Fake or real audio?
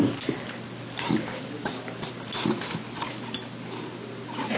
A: real